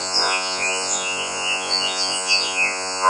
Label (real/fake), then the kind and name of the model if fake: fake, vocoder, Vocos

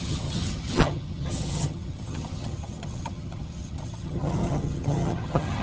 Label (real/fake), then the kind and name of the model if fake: fake, vocoder, HiFi-GAN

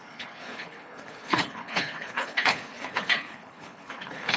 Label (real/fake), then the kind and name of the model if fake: fake, codec, HILCodec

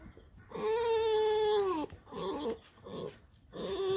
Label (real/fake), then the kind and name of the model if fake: real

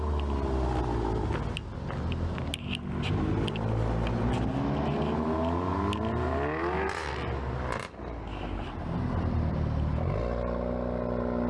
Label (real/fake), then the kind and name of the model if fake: real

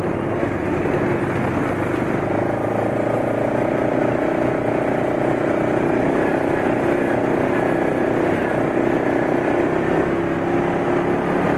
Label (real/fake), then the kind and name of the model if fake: real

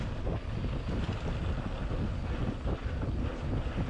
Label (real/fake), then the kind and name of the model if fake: real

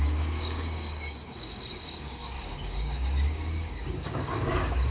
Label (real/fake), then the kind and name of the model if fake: fake, codec, DAC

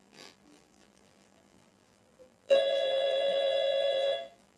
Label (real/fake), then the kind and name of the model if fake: fake, vocoder, BigVGAN v2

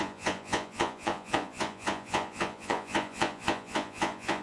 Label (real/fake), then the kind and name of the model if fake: fake, vocoder, Vocos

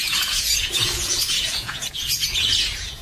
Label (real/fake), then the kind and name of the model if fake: fake, vocoder, Vocos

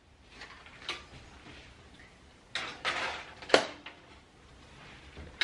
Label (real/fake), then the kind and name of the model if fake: real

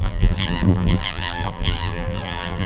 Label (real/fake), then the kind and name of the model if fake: fake, vocoder, BigVGAN v2